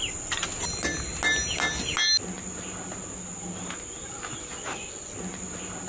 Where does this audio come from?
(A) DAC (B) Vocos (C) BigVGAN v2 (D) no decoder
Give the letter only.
D